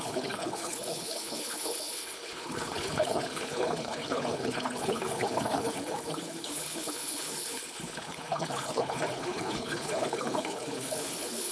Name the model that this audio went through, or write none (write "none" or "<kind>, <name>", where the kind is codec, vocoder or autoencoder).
codec, HILCodec